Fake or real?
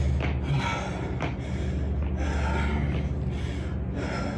real